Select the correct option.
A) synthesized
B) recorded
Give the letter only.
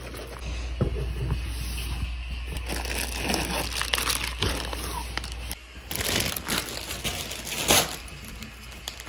B